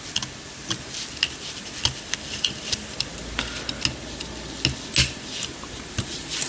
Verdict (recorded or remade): recorded